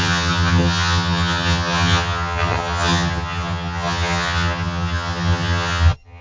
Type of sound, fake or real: fake